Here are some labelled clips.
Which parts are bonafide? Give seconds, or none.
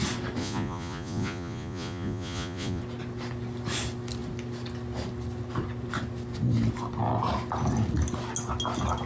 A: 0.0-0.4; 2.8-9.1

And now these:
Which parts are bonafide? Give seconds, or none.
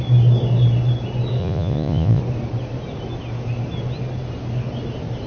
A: 0.0-1.4; 2.2-5.3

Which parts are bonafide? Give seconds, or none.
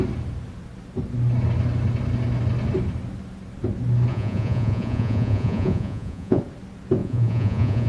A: 0.0-4.1; 6.4-7.0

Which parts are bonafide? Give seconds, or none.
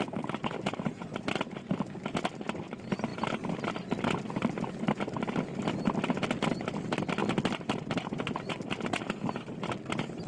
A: 7.2-8.9